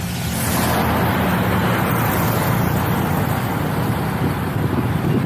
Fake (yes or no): no